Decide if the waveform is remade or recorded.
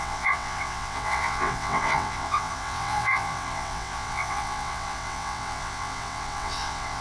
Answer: remade